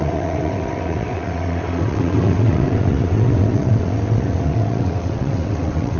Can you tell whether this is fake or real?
fake